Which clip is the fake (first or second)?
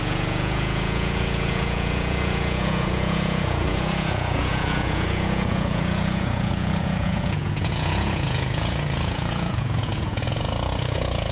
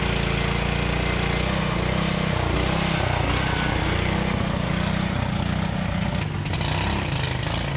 first